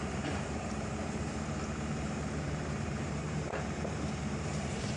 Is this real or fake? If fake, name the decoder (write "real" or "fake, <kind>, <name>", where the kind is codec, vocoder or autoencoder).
fake, vocoder, BigVGAN v2